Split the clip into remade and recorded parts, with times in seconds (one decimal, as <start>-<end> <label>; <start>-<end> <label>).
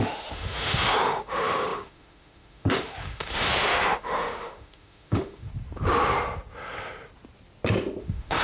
0.0-5.5 remade; 5.5-8.0 recorded; 8.0-8.4 remade